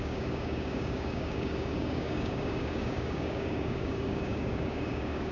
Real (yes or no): no